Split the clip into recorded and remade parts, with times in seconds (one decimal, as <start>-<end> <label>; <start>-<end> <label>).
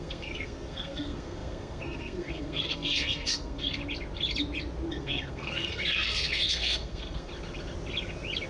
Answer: 0.0-3.8 remade; 3.8-4.9 recorded; 4.9-7.3 remade; 7.3-8.5 recorded